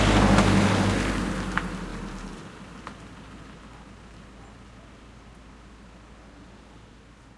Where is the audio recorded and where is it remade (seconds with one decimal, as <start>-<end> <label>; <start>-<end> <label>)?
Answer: 0.0-7.4 recorded